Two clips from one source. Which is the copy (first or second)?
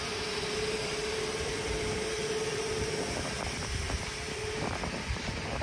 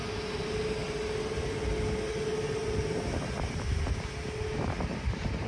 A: first